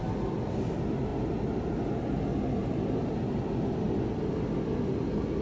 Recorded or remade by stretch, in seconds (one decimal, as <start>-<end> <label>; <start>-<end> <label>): 0.0-1.1 recorded; 1.1-2.0 remade; 2.0-2.6 recorded; 2.6-3.1 remade; 3.1-5.4 recorded